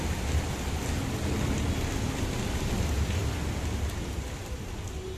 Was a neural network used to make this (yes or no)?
no